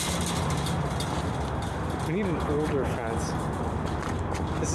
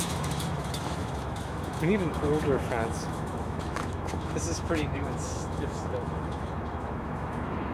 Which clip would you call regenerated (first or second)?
second